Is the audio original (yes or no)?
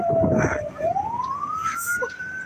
yes